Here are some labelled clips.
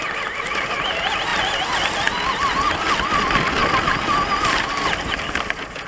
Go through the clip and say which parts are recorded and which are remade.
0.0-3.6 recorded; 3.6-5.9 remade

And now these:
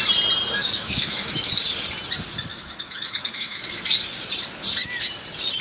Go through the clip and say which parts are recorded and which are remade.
0.0-0.6 recorded; 0.6-1.5 remade; 1.5-2.5 recorded; 2.5-3.6 remade; 3.6-5.6 recorded

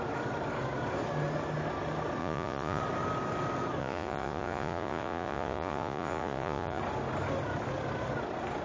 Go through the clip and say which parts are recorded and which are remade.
0.0-2.2 recorded; 2.2-2.8 remade; 2.8-3.8 recorded; 3.8-6.8 remade; 6.8-8.6 recorded

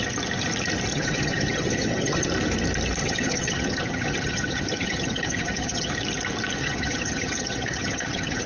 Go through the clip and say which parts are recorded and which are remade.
0.0-0.9 recorded; 0.9-2.3 remade; 2.3-3.0 recorded; 3.0-5.9 remade; 5.9-6.6 recorded; 6.6-8.5 remade

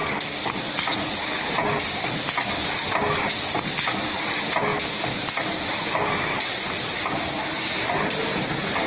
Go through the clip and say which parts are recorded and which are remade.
0.0-8.9 recorded